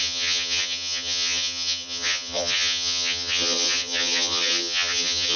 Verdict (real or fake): fake